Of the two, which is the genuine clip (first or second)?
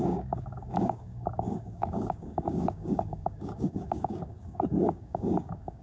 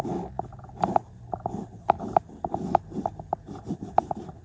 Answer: second